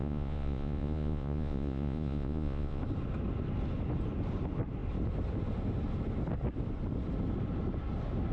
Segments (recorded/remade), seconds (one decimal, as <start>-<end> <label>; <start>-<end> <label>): 0.0-2.8 remade; 2.8-8.3 recorded